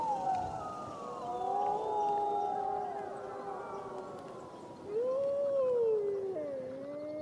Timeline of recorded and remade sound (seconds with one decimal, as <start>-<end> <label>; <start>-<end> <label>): 0.0-7.2 recorded